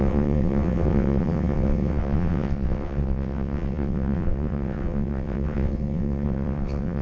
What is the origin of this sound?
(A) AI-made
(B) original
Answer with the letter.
A